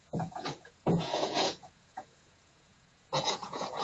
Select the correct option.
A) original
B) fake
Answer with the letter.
B